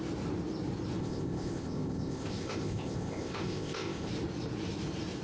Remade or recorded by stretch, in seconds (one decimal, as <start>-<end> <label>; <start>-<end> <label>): 0.0-1.0 recorded; 1.0-4.1 remade; 4.1-5.2 recorded